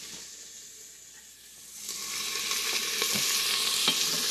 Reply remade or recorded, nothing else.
recorded